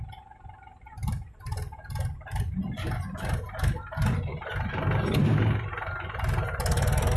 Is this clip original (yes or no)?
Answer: yes